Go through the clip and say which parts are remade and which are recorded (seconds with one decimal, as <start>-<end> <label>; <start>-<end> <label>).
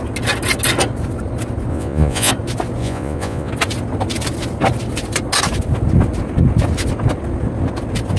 0.0-1.7 recorded; 1.7-2.3 remade; 2.3-2.8 recorded; 2.8-3.5 remade; 3.5-8.2 recorded